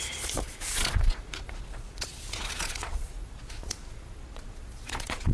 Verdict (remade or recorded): remade